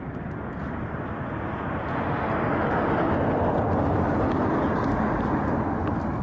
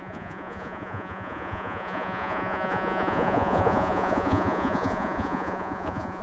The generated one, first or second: second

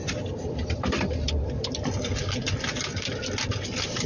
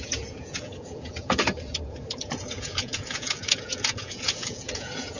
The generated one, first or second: second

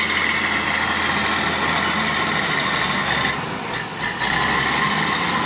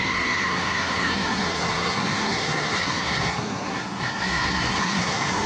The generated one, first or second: second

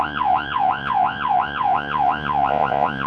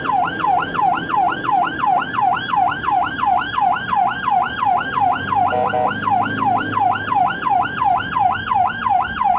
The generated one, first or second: first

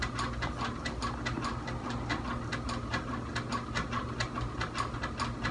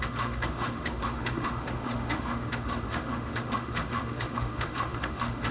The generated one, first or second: second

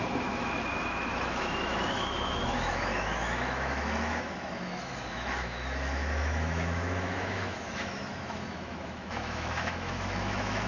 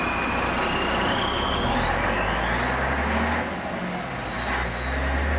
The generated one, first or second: first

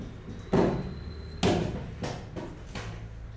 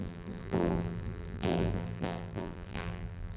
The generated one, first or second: second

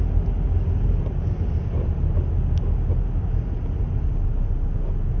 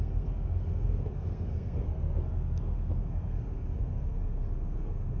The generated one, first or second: second